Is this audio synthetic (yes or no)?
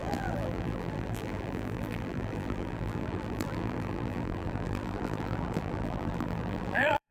yes